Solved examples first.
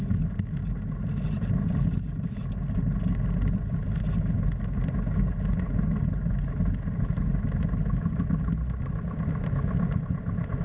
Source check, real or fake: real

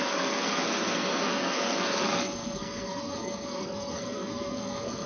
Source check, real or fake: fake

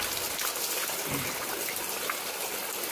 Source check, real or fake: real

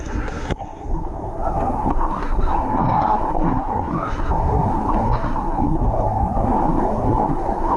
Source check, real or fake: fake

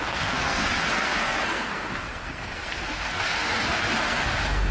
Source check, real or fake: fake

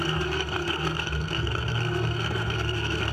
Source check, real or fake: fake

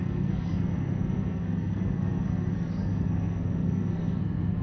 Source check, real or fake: fake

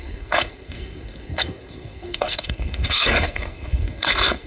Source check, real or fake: fake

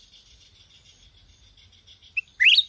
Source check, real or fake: real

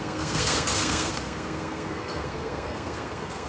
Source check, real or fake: fake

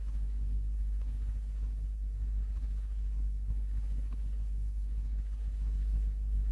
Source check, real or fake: fake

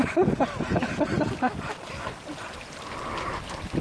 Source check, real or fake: real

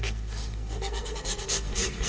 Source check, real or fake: fake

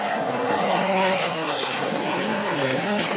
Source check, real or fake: fake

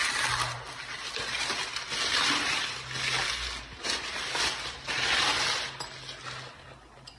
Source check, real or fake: real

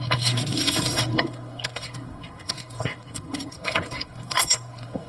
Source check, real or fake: fake